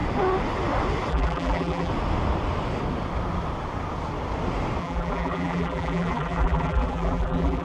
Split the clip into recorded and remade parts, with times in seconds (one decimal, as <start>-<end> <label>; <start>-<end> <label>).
0.0-1.1 recorded; 1.1-1.9 remade; 1.9-4.8 recorded; 4.8-7.6 remade